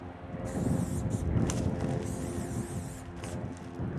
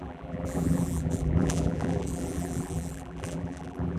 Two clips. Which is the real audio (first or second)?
first